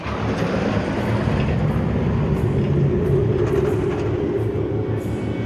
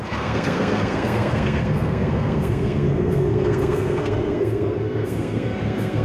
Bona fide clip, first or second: first